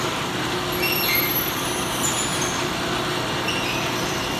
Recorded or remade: recorded